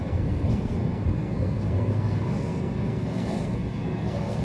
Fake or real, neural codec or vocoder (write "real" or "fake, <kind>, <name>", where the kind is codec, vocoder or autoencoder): fake, codec, SNAC